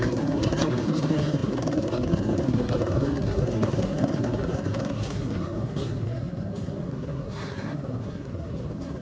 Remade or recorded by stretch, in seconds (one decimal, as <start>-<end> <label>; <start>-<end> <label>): 0.0-9.0 remade